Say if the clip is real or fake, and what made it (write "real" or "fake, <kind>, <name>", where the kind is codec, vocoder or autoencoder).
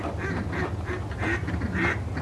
real